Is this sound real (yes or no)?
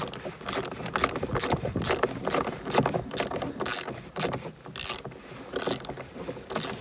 yes